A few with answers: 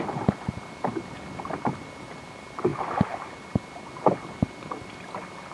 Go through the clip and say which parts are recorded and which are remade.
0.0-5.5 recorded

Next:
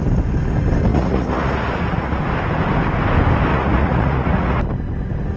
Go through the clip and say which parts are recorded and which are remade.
0.0-0.9 recorded; 0.9-2.2 remade; 2.2-3.5 recorded; 3.5-4.6 remade; 4.6-5.4 recorded

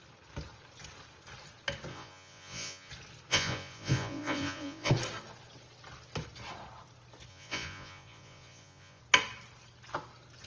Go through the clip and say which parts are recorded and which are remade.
0.0-1.9 recorded; 1.9-2.9 remade; 2.9-3.3 recorded; 3.3-4.9 remade; 4.9-7.3 recorded; 7.3-9.0 remade; 9.0-10.5 recorded

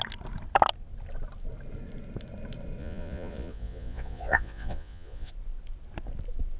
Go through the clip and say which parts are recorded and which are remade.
0.0-2.8 recorded; 2.8-5.3 remade; 5.3-6.6 recorded

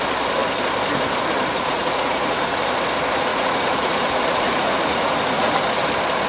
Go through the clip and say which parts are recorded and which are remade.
0.0-1.5 recorded; 1.5-2.6 remade; 2.6-3.3 recorded; 3.3-5.5 remade; 5.5-6.3 recorded

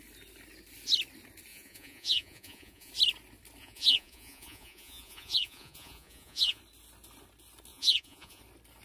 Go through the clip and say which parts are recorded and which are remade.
0.0-1.5 recorded; 1.5-2.9 remade; 2.9-3.6 recorded; 3.6-6.6 remade; 6.6-7.7 recorded; 7.7-8.4 remade; 8.4-8.8 recorded